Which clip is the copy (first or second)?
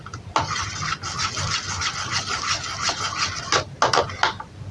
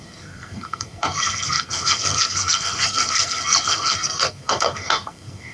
second